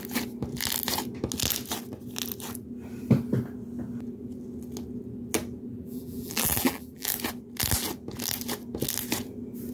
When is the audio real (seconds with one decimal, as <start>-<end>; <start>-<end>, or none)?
0.0-5.7; 7.1-9.7